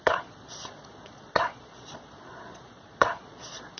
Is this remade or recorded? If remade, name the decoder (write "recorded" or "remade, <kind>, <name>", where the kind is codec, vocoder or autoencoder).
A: remade, vocoder, Vocos